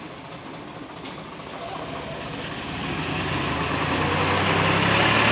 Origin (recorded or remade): recorded